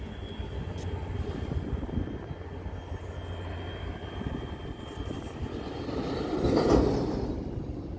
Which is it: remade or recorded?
recorded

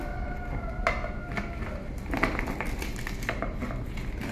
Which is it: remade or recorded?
recorded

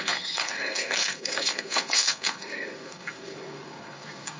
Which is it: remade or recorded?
remade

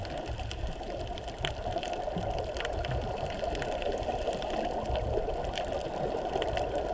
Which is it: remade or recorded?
recorded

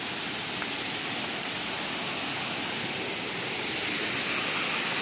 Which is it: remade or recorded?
recorded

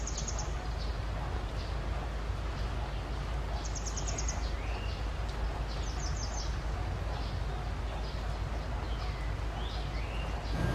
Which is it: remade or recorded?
recorded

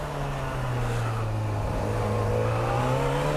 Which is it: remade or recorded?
recorded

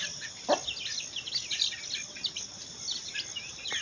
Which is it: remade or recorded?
recorded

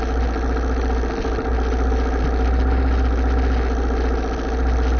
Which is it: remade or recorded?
recorded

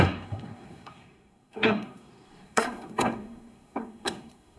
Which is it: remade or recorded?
remade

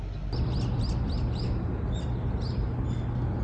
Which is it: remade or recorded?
recorded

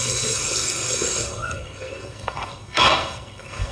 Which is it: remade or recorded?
remade